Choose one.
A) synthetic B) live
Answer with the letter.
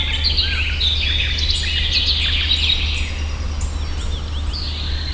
B